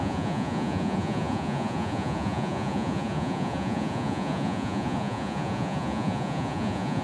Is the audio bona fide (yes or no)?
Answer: no